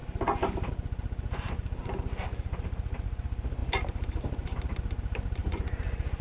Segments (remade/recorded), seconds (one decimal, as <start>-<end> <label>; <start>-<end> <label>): 0.0-0.7 remade; 0.7-1.8 recorded; 1.8-3.2 remade; 3.2-5.4 recorded; 5.4-6.2 remade